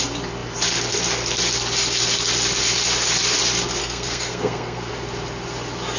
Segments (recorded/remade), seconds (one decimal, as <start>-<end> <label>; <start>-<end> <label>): 0.0-3.8 recorded; 3.8-4.9 remade; 4.9-6.0 recorded

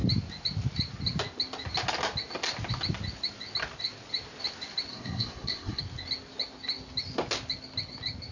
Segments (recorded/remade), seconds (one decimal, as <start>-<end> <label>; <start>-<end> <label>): 0.0-4.9 recorded; 4.9-5.8 remade; 5.8-8.3 recorded

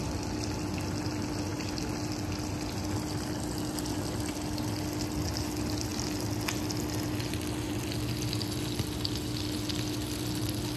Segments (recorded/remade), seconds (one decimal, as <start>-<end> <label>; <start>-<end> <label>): 0.0-10.8 recorded

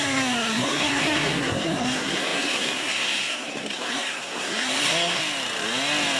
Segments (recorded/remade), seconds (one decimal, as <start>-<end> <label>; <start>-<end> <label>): 0.0-5.2 remade; 5.2-6.2 recorded

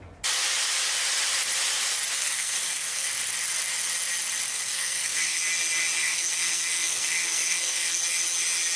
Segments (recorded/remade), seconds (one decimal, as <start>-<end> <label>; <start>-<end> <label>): 0.0-2.2 recorded; 2.2-3.1 remade; 3.1-4.5 recorded; 4.5-5.4 remade; 5.4-6.0 recorded; 6.0-8.0 remade; 8.0-8.8 recorded

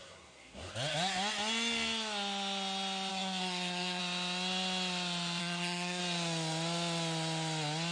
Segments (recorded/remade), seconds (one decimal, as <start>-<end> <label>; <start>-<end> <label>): 0.0-0.7 remade; 0.7-3.1 recorded; 3.1-4.0 remade; 4.0-5.4 recorded; 5.4-6.0 remade; 6.0-7.9 recorded

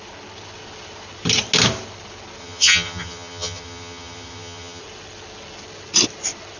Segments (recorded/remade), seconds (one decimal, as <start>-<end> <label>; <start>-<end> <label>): 0.0-2.4 recorded; 2.4-4.8 remade; 4.8-6.6 recorded